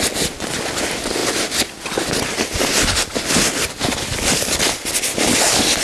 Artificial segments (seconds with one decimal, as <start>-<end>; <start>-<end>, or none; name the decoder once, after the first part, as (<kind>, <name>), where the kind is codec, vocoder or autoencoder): none